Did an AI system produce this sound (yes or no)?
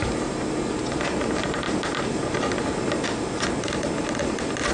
no